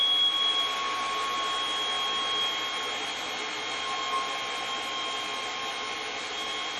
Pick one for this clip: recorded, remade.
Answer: recorded